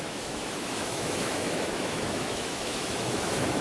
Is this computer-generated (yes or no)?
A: yes